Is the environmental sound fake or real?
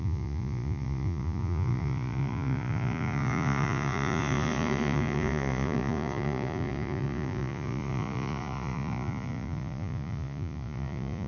fake